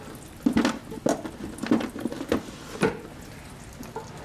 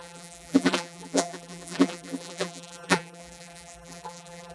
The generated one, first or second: second